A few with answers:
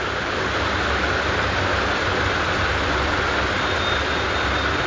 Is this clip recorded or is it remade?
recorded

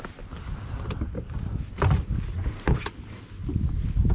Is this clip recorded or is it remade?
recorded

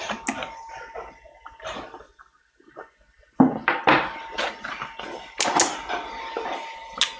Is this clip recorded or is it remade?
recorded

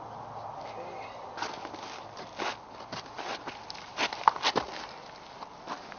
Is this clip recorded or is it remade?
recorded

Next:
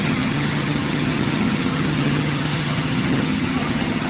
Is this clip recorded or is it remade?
remade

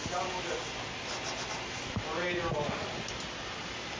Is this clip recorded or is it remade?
recorded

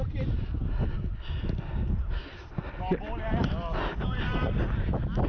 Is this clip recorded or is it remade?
recorded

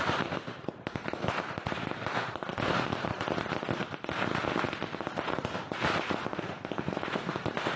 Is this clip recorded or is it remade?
recorded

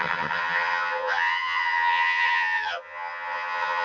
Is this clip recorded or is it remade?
remade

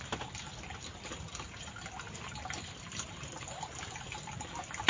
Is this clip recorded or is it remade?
recorded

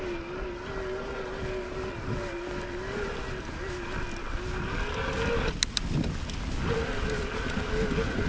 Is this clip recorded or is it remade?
recorded